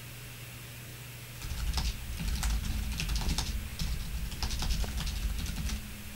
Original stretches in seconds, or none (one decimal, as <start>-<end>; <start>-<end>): 0.0-6.1